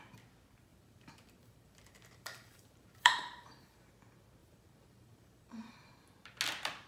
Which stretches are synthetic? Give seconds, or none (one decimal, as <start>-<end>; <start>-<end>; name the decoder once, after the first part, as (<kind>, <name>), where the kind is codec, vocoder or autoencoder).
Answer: 0.7-3.9 (vocoder, BigVGAN v2); 4.4-5.7